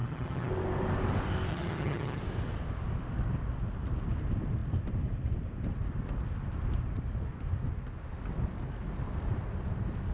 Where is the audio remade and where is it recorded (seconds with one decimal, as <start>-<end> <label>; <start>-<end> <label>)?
0.0-0.5 remade; 0.5-1.5 recorded; 1.5-2.2 remade; 2.2-10.1 recorded